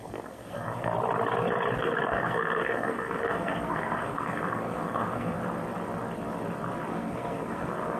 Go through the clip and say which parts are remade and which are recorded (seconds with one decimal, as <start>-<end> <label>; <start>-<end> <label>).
0.0-0.9 remade; 0.9-1.8 recorded; 1.8-5.4 remade; 5.4-6.9 recorded; 6.9-8.0 remade